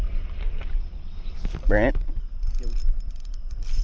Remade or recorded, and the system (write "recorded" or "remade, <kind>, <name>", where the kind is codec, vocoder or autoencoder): remade, vocoder, BigVGAN v2